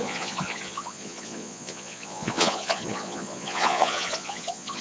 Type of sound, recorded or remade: remade